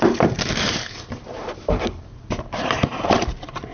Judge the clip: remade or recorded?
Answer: remade